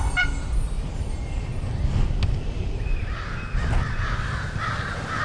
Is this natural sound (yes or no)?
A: yes